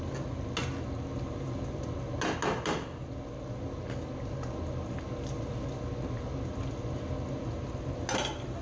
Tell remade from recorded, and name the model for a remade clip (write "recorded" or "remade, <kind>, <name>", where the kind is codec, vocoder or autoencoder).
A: recorded